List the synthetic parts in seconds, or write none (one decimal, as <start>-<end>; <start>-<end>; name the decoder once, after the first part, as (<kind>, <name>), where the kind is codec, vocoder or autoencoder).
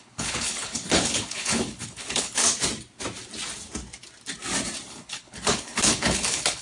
0.0-2.4 (codec, HILCodec); 4.9-6.6